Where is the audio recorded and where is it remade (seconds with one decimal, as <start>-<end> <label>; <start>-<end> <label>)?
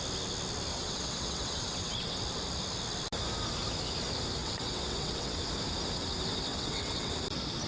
0.0-0.7 recorded; 0.7-2.2 remade; 2.2-4.4 recorded; 4.4-5.4 remade; 5.4-6.5 recorded; 6.5-7.1 remade; 7.1-7.7 recorded